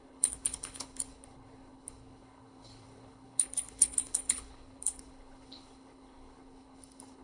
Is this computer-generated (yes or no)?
yes